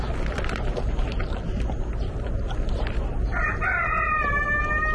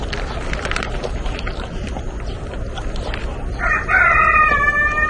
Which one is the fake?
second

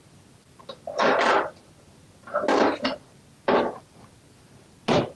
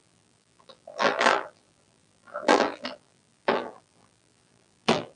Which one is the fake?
second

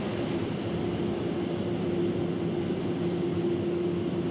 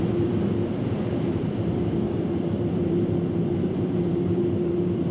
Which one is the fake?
second